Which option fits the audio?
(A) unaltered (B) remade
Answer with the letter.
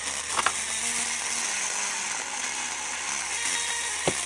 A